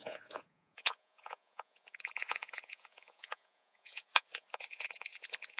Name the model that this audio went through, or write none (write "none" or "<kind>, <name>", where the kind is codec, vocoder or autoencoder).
vocoder, Vocos